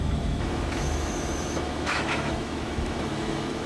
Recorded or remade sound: remade